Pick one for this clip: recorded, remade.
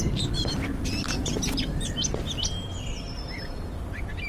recorded